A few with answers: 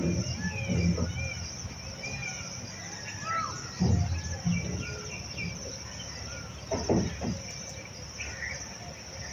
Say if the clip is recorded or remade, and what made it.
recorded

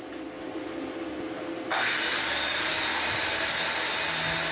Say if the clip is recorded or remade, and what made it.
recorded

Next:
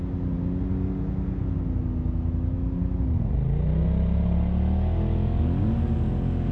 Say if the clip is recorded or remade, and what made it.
recorded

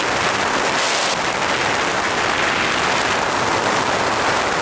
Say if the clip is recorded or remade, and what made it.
recorded